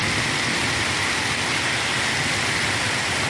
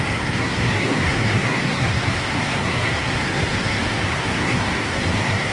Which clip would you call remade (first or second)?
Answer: second